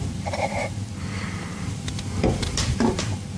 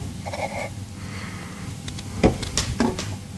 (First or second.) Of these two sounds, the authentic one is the second